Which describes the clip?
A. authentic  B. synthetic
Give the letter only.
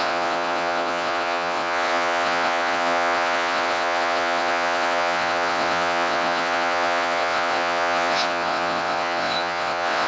B